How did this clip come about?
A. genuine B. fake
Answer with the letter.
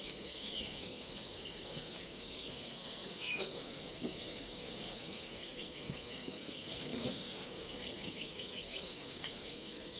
B